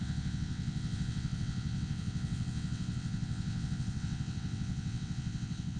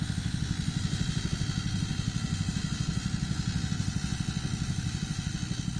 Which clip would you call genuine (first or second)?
second